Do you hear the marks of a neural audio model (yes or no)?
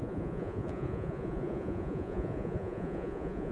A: yes